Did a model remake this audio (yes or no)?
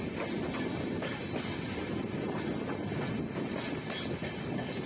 no